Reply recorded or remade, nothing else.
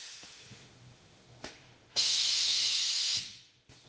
remade